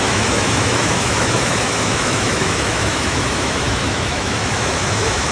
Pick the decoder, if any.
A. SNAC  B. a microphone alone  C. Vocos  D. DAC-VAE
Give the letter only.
D